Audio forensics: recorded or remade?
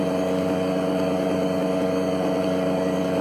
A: remade